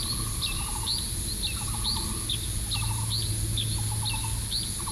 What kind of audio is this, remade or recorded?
recorded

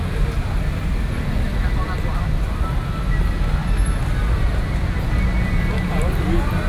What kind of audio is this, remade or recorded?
recorded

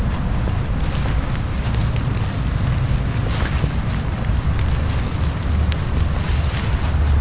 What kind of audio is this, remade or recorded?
recorded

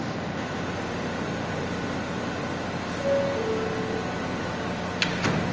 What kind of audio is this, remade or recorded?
recorded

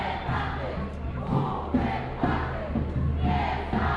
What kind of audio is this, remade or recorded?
recorded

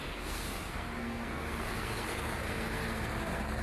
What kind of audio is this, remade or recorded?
remade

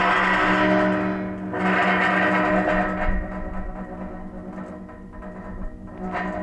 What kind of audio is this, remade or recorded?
recorded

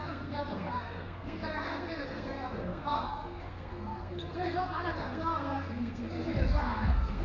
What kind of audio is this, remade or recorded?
remade